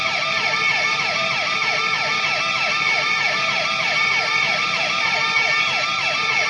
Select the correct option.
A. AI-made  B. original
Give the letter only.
B